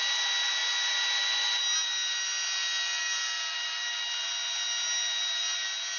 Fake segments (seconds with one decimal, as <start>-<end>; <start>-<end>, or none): none